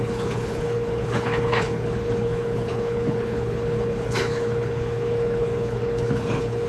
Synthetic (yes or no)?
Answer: yes